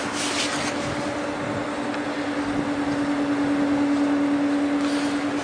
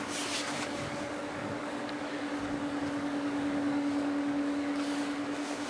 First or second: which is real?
first